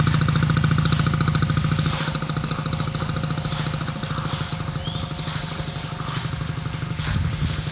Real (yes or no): yes